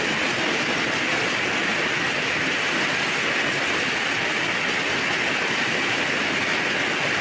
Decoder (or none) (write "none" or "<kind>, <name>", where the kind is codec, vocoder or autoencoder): none